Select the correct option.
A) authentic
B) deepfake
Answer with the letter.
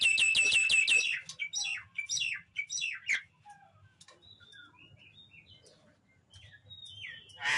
A